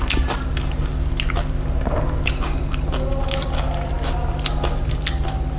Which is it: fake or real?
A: real